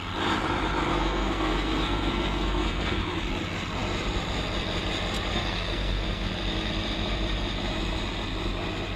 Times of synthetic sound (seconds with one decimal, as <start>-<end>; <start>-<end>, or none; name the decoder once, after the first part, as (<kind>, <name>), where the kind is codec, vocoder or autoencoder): 0.9-3.0 (codec, SNAC); 5.3-6.3

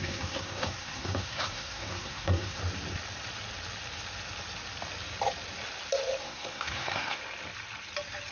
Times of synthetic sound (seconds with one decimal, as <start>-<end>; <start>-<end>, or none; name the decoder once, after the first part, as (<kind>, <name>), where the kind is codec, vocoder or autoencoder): 0.0-2.6 (codec, SNAC); 6.2-7.2

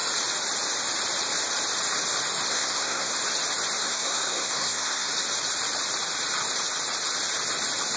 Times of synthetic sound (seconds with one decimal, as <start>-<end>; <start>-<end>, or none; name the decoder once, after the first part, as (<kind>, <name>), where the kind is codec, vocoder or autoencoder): 2.5-3.1 (codec, SNAC); 3.8-5.1